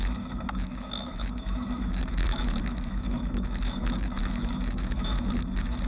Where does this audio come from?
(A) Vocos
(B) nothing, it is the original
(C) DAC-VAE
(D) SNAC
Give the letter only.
C